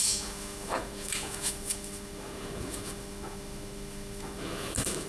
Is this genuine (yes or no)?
no